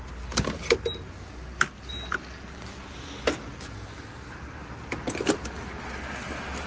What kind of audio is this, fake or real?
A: real